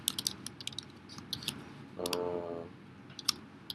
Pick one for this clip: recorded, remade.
recorded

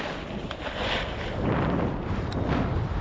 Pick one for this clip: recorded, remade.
recorded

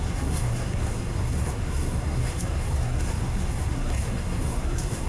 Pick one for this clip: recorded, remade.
remade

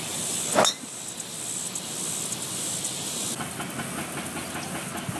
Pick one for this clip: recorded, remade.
recorded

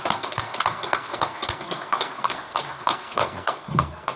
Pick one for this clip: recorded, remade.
remade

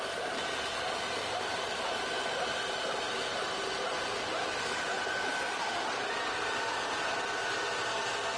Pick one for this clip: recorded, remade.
recorded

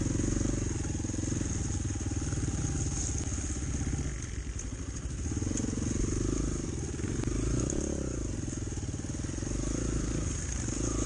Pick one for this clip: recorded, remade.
recorded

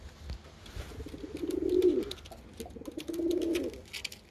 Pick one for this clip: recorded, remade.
recorded